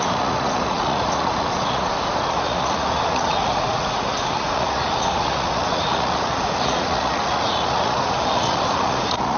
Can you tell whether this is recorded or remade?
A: remade